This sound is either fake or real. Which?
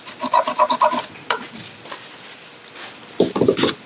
real